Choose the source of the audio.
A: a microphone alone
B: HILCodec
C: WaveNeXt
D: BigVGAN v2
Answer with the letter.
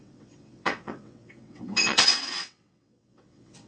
C